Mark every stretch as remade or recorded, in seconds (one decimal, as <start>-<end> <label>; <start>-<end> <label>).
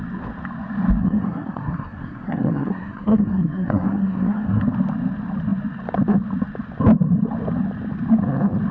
0.0-1.0 recorded; 1.0-4.6 remade; 4.6-8.7 recorded